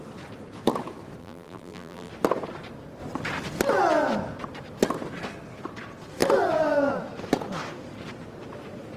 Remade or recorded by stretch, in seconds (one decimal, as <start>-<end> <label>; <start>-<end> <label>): 0.0-1.2 recorded; 1.2-2.1 remade; 2.1-9.0 recorded